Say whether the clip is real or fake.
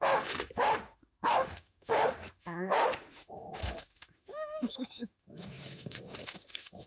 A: fake